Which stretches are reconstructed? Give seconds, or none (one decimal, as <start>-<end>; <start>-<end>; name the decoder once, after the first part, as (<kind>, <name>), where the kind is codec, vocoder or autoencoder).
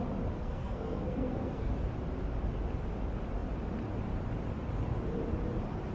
0.4-1.7 (codec, SNAC)